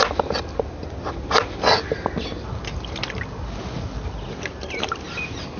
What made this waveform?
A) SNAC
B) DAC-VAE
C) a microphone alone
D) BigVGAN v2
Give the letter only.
C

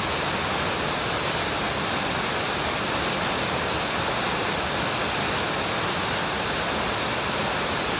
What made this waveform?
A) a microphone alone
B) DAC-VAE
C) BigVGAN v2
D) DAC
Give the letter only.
A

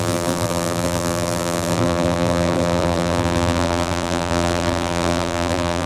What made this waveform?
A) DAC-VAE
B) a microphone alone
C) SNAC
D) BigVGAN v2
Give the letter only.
D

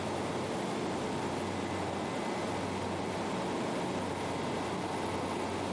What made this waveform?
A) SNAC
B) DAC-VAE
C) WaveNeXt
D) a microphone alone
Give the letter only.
D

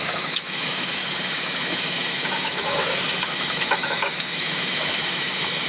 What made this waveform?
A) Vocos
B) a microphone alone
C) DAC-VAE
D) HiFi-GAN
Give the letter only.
C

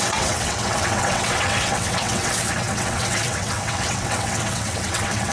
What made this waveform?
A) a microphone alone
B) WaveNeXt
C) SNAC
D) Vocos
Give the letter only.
B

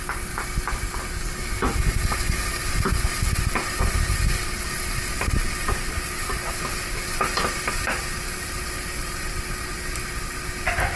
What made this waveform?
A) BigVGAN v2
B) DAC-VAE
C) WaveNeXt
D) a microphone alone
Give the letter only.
D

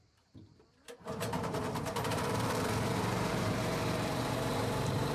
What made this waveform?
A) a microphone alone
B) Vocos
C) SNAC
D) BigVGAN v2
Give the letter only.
D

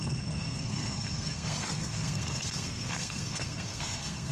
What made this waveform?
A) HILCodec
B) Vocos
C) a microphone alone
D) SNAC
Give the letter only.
D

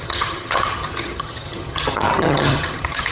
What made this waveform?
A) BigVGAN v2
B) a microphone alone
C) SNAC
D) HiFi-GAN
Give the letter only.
D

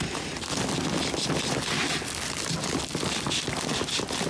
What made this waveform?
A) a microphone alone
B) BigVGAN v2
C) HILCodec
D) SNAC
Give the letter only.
A